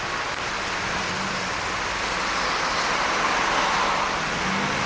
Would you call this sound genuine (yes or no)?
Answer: yes